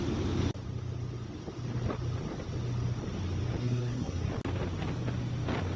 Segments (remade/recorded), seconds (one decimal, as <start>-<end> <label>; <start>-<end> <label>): 0.0-3.6 recorded; 3.6-4.2 remade; 4.2-5.8 recorded